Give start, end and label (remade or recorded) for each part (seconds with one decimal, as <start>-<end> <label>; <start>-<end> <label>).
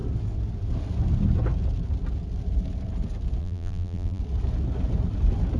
0.0-3.4 recorded; 3.4-4.2 remade; 4.2-5.6 recorded